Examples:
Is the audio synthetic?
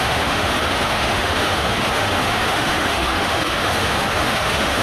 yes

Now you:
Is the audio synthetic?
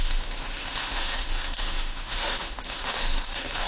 yes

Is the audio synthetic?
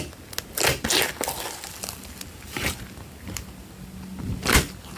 no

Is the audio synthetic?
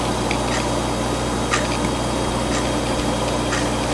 no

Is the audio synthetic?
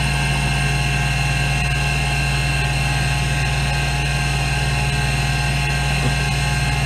no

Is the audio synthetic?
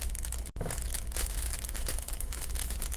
yes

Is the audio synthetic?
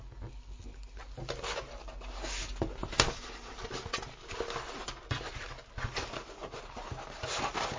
no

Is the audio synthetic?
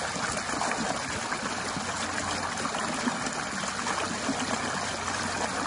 no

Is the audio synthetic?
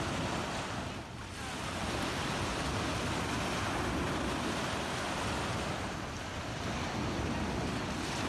no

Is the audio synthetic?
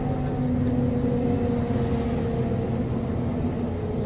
no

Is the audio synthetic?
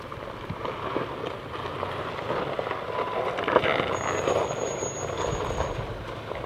no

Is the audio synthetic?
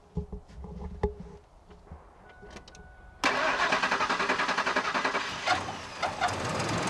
no